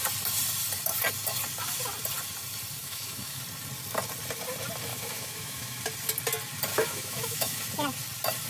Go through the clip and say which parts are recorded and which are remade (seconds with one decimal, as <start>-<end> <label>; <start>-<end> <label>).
0.0-2.8 recorded; 2.8-3.4 remade; 3.4-4.9 recorded; 4.9-5.8 remade; 5.8-6.7 recorded; 6.7-7.6 remade; 7.6-8.5 recorded